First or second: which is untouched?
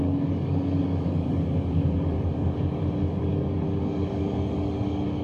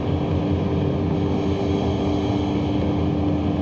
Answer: second